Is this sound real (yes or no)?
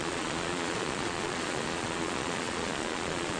no